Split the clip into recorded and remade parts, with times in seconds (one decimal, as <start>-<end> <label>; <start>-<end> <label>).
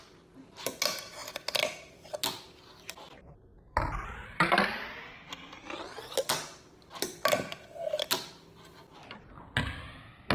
0.0-10.3 recorded